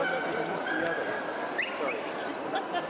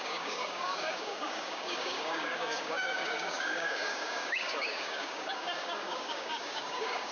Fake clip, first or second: second